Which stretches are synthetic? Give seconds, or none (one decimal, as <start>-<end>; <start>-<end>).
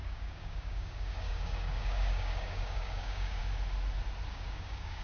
0.0-3.4; 4.3-5.0